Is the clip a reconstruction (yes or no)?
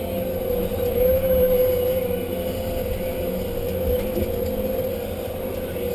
no